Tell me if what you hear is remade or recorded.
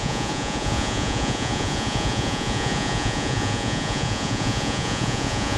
remade